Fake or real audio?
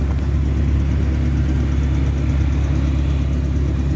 real